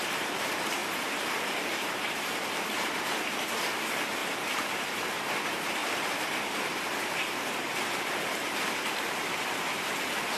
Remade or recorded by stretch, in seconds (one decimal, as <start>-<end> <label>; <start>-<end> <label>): 0.0-4.2 remade; 4.2-4.7 recorded; 4.7-10.4 remade